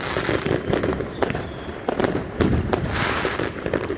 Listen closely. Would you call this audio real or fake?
real